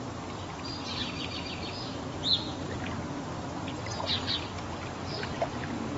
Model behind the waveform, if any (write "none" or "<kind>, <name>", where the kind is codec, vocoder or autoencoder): none